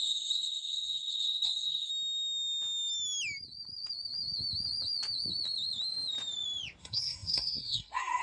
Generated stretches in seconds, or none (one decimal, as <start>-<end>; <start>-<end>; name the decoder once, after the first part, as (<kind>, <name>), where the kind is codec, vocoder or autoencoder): 0.0-1.9 (codec, SNAC); 6.8-8.2